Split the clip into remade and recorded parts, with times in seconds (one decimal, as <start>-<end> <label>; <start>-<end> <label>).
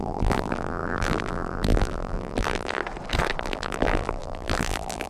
0.0-2.8 remade; 2.8-3.4 recorded; 3.4-5.1 remade